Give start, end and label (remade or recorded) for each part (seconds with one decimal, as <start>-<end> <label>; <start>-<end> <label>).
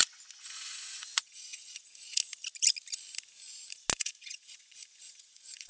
0.0-2.2 remade; 2.2-4.0 recorded; 4.0-5.7 remade